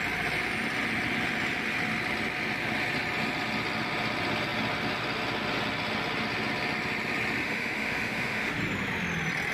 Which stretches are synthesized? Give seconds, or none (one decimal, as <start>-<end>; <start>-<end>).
7.4-8.6